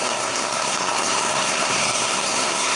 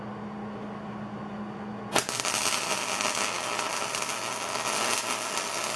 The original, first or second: second